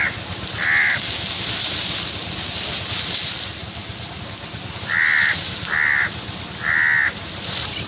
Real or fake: real